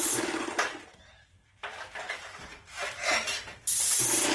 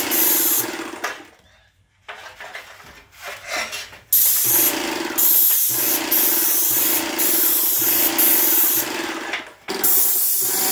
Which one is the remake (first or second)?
first